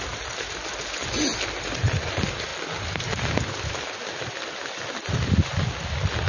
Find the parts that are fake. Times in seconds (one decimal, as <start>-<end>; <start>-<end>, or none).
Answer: none

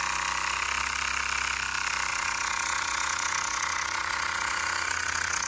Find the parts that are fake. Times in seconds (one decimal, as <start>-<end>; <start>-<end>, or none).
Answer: 2.1-5.5